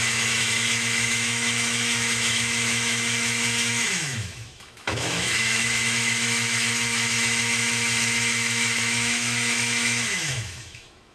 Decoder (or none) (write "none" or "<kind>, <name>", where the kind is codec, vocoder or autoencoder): autoencoder, DAC-VAE